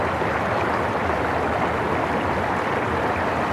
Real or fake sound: real